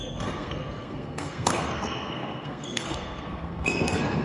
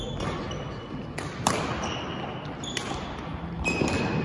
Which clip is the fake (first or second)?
first